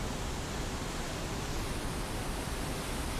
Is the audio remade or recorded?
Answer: recorded